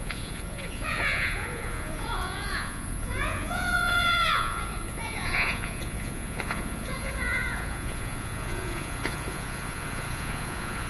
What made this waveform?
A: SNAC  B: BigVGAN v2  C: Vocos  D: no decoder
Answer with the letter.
C